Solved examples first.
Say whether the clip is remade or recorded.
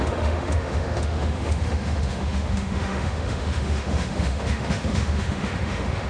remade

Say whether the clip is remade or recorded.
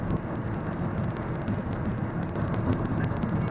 recorded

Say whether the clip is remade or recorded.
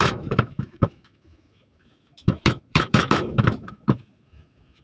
remade